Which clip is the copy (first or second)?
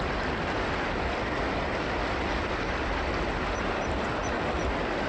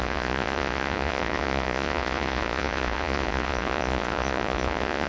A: second